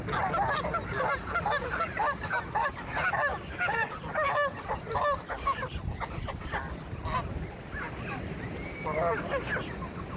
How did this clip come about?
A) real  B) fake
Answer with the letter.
A